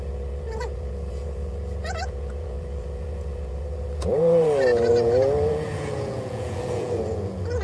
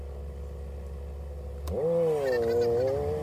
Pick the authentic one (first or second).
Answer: second